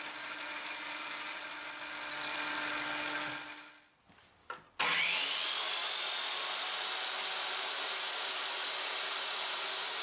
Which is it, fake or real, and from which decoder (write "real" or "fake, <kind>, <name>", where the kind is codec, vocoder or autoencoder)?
real